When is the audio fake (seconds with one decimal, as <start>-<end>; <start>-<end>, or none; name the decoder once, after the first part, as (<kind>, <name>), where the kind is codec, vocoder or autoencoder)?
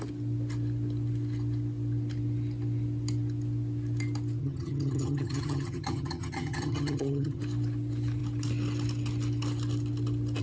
4.4-7.4 (vocoder, HiFi-GAN)